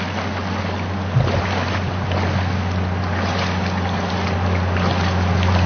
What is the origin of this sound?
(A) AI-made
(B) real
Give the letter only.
B